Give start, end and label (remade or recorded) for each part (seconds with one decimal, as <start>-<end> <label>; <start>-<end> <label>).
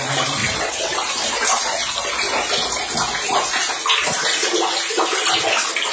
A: 0.0-0.4 recorded; 0.4-1.1 remade; 1.1-5.9 recorded